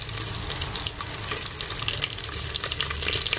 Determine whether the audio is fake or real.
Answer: real